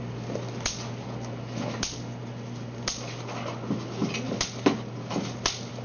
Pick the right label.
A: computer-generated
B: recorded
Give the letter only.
B